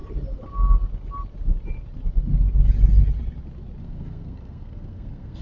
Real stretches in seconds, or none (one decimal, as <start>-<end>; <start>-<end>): 0.0-3.8